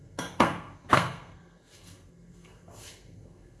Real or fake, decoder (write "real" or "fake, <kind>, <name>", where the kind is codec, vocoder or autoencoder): fake, codec, SNAC